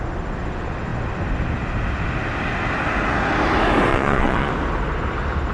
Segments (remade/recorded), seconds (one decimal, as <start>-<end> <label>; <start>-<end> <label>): 0.0-3.9 recorded; 3.9-4.5 remade; 4.5-5.5 recorded